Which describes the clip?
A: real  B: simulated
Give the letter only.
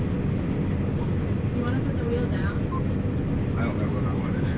A